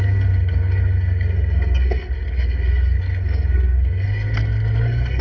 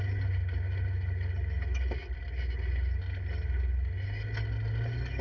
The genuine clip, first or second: second